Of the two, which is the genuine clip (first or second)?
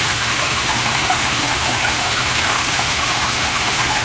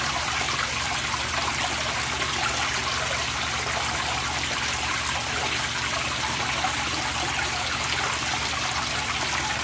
second